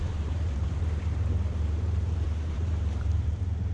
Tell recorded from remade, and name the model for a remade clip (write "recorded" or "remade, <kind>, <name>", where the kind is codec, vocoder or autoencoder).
remade, vocoder, BigVGAN v2